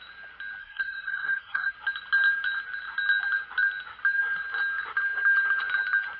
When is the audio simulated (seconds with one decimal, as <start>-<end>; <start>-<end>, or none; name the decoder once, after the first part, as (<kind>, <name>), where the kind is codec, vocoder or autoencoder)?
0.6-1.7 (codec, SNAC)